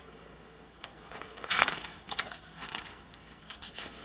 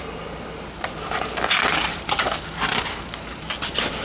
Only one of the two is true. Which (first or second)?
second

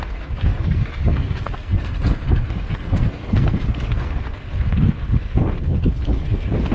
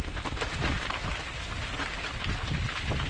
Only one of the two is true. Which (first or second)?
second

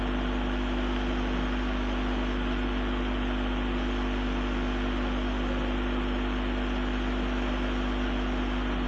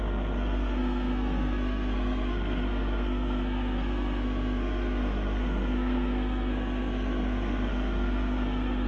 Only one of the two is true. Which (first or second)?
first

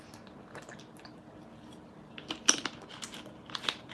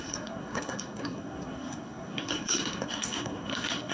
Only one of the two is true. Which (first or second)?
first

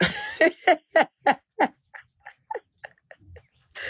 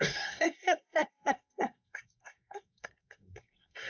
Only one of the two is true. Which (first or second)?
first